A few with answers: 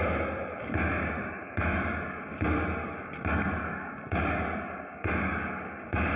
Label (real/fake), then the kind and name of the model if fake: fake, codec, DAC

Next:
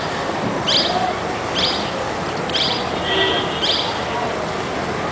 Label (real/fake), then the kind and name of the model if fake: real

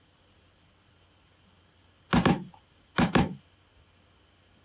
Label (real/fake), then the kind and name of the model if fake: real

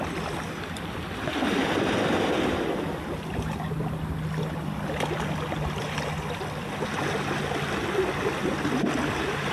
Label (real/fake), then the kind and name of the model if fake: real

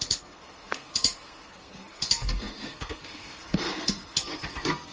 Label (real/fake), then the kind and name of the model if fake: fake, codec, SNAC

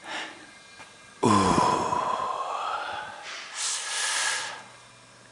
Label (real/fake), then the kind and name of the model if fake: real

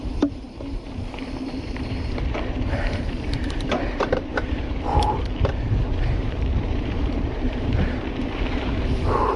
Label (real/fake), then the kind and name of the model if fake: fake, vocoder, BigVGAN v2